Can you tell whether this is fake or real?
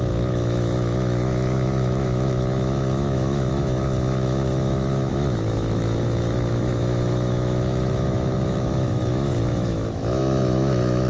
fake